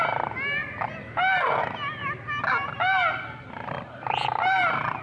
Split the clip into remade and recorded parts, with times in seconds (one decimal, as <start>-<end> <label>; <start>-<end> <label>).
0.0-5.0 recorded